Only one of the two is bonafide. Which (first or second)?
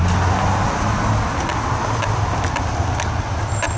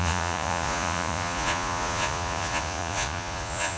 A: first